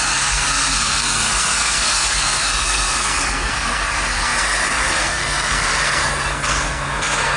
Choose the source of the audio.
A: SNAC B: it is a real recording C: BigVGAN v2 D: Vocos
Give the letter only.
A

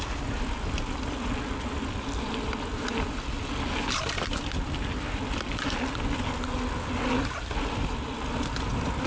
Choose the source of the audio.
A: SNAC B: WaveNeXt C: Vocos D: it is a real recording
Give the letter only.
D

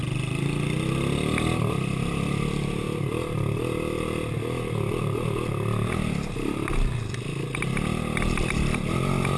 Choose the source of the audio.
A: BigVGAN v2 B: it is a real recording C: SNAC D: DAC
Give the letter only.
B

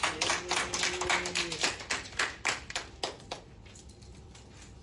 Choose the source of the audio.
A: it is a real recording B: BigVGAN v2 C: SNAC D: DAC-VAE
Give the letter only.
A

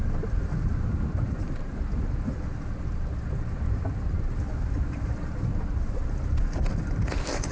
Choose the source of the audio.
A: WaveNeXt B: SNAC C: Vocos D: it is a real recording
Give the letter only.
D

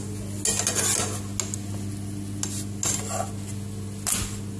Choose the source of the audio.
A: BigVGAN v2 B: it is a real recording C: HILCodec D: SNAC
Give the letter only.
B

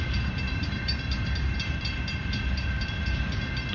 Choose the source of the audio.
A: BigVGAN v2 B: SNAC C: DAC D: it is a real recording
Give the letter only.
A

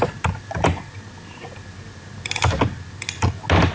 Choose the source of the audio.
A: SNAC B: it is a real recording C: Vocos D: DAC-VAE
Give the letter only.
B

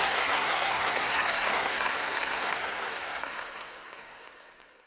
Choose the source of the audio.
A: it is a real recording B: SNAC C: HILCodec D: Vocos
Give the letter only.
B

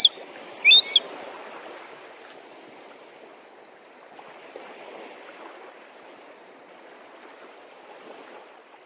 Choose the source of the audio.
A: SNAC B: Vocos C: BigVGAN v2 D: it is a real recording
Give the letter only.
D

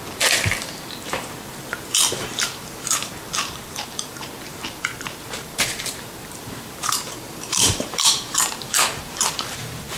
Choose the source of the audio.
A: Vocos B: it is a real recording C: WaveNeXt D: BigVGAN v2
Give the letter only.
D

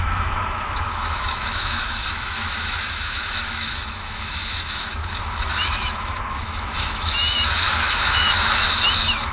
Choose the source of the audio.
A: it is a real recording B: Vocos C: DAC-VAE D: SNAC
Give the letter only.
C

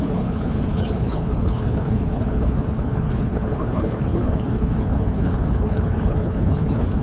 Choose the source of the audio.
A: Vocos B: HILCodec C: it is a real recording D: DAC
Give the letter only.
B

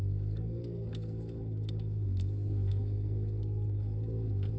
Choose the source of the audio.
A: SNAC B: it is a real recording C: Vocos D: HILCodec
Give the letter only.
A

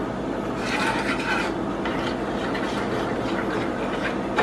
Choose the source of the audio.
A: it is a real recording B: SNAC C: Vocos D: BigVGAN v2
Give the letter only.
A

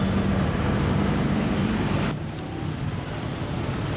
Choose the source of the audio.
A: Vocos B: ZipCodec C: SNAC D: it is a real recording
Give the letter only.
D